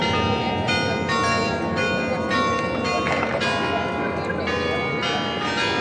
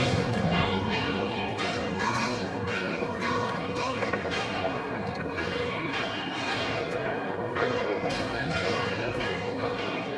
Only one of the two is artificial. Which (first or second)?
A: second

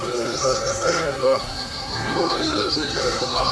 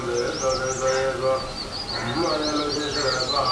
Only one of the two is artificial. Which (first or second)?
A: first